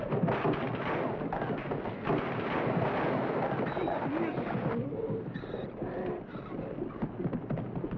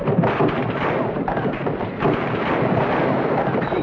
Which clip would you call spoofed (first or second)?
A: second